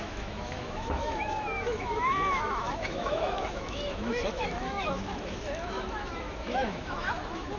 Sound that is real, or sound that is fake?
fake